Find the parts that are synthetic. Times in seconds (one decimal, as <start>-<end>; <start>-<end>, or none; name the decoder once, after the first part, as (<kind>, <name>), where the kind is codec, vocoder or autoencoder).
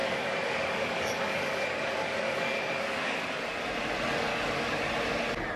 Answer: 0.0-3.4 (codec, DAC); 4.3-4.9